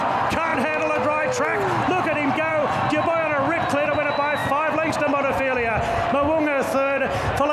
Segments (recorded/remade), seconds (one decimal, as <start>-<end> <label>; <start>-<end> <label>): 0.0-7.5 recorded